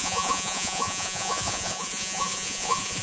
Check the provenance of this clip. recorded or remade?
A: remade